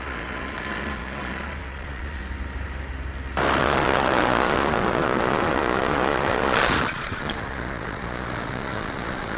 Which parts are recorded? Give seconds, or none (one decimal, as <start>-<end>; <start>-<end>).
2.2-3.6